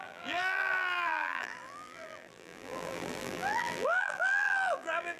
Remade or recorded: remade